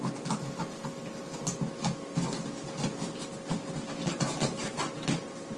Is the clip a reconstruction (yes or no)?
no